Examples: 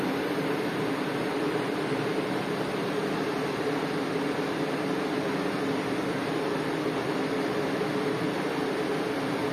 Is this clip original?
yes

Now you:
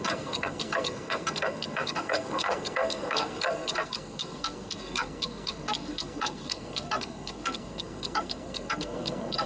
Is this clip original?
no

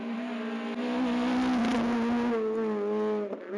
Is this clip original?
yes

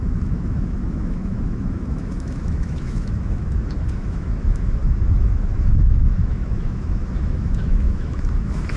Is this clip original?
no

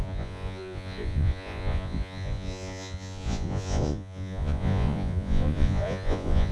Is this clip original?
no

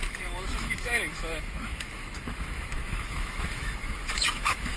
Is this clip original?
no